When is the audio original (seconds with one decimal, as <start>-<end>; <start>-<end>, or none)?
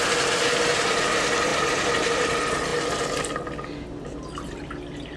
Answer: 0.0-1.5; 2.3-5.2